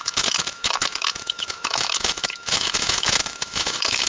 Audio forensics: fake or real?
fake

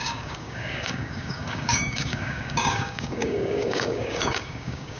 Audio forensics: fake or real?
fake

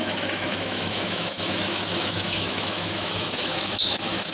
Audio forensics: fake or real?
fake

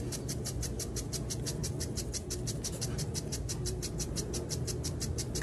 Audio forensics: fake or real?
fake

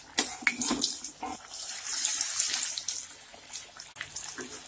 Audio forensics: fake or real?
real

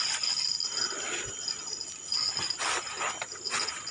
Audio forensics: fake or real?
real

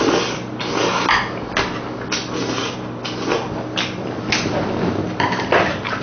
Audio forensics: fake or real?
real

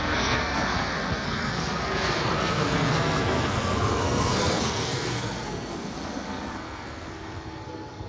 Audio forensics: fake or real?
fake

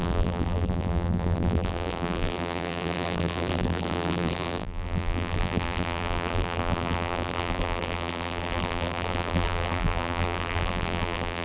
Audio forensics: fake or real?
fake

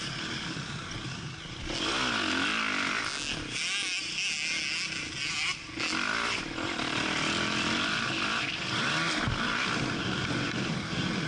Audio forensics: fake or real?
real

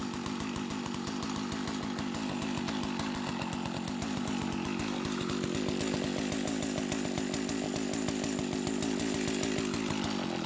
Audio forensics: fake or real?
real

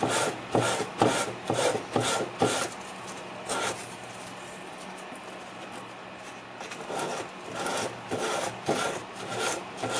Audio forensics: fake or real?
real